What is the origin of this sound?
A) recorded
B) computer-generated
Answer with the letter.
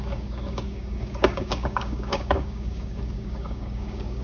B